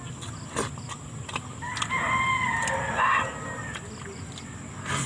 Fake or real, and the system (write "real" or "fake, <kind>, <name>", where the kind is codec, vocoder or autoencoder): real